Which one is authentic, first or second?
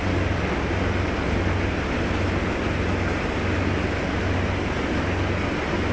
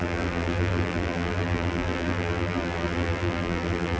first